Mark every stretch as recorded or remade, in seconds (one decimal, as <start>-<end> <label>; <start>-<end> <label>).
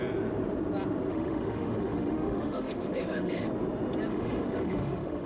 0.0-1.1 recorded; 1.1-3.5 remade; 3.5-4.1 recorded; 4.1-5.3 remade